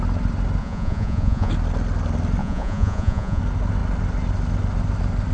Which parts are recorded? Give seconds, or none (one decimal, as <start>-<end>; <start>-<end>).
0.0-0.6; 1.5-2.4; 3.4-5.3